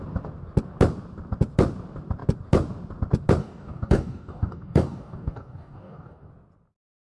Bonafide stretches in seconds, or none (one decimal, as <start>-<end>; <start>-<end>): 0.0-3.4; 6.3-7.0